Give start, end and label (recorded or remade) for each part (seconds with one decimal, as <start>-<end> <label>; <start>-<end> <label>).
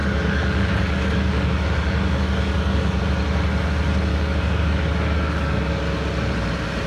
0.0-3.0 remade; 3.0-4.1 recorded; 4.1-5.7 remade; 5.7-6.9 recorded